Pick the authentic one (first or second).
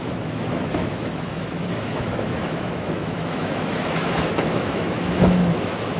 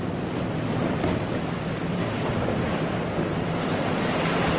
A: second